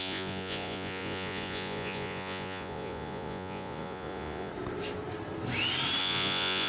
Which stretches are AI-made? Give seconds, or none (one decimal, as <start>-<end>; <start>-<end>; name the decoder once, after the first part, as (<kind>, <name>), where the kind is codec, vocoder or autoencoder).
0.0-4.5 (vocoder, Vocos); 6.0-6.7